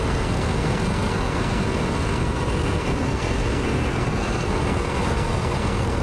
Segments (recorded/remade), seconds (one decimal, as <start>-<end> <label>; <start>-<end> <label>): 0.0-6.0 remade